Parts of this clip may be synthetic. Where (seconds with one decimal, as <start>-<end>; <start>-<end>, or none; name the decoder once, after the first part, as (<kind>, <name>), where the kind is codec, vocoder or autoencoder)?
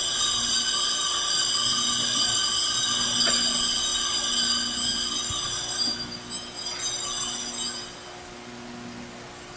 none